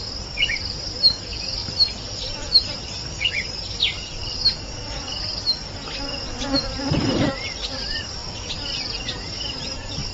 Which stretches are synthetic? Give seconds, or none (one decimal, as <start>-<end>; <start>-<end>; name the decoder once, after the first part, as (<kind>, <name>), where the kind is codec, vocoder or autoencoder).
0.0-4.4 (vocoder, BigVGAN v2); 6.8-8.2; 8.8-10.1